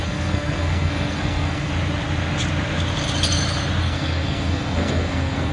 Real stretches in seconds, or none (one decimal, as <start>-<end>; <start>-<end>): 1.7-3.8